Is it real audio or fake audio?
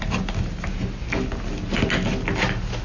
real